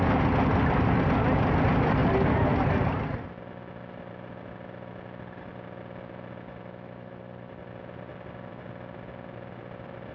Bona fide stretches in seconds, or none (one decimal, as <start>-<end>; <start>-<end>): 0.0-10.1